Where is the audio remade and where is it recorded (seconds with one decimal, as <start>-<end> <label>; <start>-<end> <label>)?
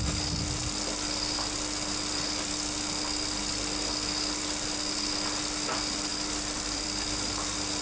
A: 0.0-6.1 recorded; 6.1-7.3 remade; 7.3-7.8 recorded